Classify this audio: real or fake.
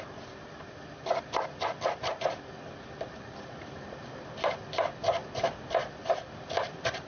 fake